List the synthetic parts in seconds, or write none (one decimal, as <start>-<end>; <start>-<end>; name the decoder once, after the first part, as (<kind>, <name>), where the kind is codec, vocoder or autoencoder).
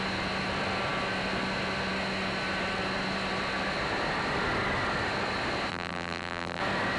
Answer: 5.7-6.6 (vocoder, BigVGAN v2)